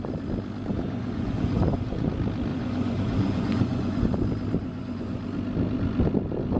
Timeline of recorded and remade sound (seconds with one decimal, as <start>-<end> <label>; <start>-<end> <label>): 0.0-0.7 recorded; 0.7-2.1 remade; 2.1-2.5 recorded; 2.5-4.1 remade; 4.1-4.6 recorded; 4.6-5.2 remade; 5.2-6.6 recorded